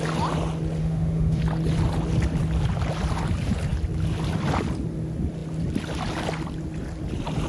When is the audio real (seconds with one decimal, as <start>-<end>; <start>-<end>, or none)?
0.0-0.8; 1.4-7.5